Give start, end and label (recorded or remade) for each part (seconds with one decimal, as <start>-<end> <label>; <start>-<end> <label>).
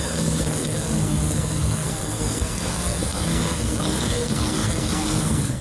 0.0-5.6 remade